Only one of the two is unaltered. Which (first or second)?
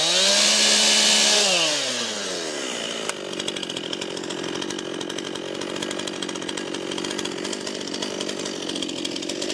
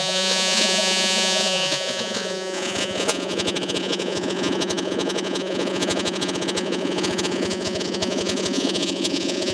first